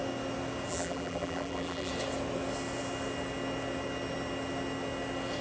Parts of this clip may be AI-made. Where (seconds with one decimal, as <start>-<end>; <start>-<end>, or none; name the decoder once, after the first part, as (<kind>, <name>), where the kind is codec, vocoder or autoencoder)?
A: 0.7-1.9 (vocoder, BigVGAN v2)